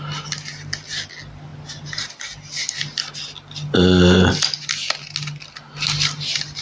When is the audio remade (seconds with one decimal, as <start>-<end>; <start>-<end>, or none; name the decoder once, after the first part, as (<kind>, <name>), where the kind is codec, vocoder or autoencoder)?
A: none